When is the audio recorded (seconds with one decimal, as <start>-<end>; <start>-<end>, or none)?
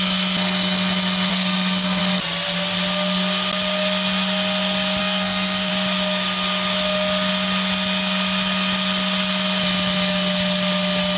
0.0-1.3; 2.0-5.0; 5.7-11.2